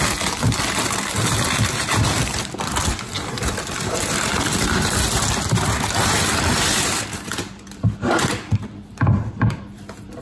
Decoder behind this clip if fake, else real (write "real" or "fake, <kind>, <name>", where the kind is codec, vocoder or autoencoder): fake, vocoder, BigVGAN v2